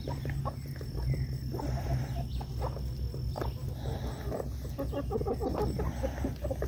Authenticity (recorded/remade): recorded